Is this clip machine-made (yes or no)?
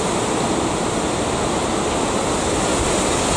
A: no